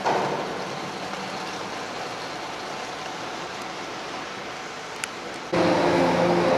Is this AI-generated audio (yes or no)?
no